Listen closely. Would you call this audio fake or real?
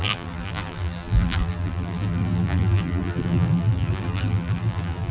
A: fake